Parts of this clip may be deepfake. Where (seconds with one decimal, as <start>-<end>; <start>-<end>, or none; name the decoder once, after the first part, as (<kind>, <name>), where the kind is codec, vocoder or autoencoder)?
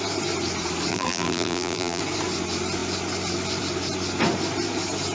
0.9-2.0 (vocoder, BigVGAN v2)